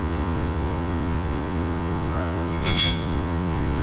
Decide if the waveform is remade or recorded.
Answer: remade